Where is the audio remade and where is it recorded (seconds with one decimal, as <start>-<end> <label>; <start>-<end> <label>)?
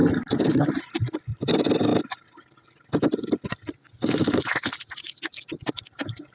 0.0-6.3 recorded